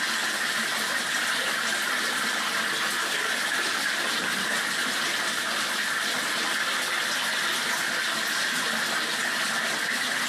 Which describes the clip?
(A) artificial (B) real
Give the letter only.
B